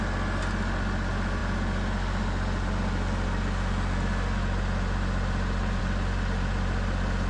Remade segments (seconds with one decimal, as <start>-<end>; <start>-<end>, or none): none